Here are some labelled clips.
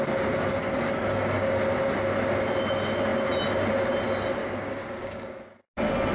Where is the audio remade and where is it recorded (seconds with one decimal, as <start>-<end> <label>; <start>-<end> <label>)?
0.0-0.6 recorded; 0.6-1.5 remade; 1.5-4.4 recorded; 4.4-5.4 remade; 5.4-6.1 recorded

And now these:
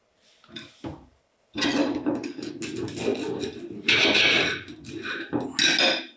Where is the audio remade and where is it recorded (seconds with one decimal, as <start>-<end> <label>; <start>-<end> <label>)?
0.0-1.8 recorded; 1.8-2.5 remade; 2.5-6.2 recorded

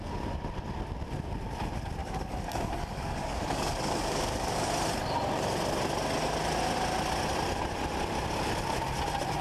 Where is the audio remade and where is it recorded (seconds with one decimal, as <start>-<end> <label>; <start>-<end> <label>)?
0.0-2.0 recorded; 2.0-4.7 remade; 4.7-9.4 recorded